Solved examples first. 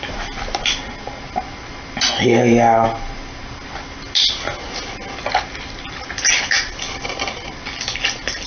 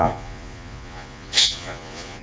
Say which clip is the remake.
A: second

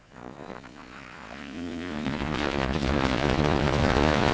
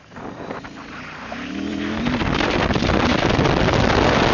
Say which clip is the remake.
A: first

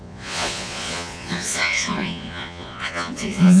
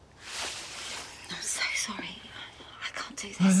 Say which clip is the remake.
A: first